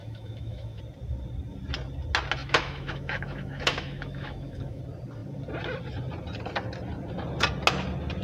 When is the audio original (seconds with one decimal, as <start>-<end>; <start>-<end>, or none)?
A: 0.8-2.4; 4.8-8.2